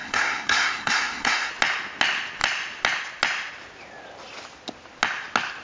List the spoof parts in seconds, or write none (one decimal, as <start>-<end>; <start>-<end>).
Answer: 0.0-1.5